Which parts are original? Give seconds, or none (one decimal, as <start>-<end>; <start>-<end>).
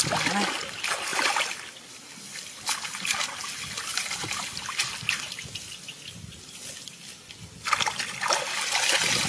0.0-3.9; 5.4-9.3